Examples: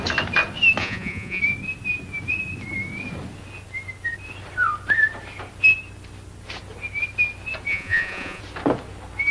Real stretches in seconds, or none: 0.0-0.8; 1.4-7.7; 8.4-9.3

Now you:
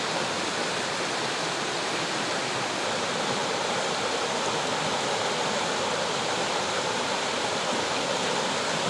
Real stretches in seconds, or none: 0.0-8.9

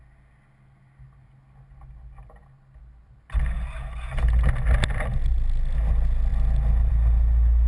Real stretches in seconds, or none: 0.0-7.7

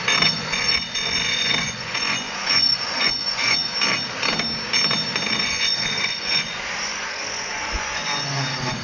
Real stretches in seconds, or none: 3.7-5.3

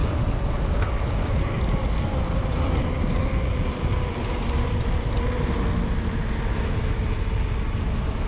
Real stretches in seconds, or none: 0.0-8.3

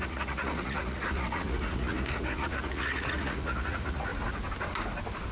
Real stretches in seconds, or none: 4.1-5.3

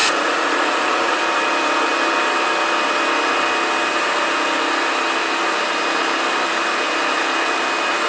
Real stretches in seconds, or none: 1.2-8.1